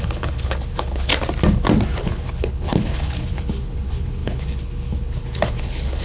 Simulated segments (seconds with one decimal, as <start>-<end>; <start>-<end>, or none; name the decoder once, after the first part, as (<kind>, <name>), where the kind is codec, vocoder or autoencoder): 0.0-1.1 (codec, HILCodec); 2.0-6.0